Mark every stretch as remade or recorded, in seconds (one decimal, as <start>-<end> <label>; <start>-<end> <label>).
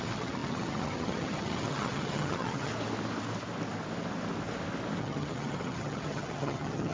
0.0-2.7 remade; 2.7-5.0 recorded; 5.0-6.9 remade